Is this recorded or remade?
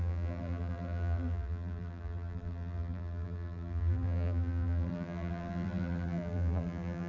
remade